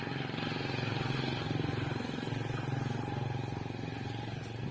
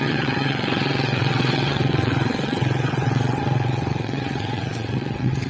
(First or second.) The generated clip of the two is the second